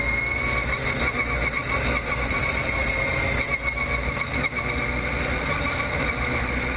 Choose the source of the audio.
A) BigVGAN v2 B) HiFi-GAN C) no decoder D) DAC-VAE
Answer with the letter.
C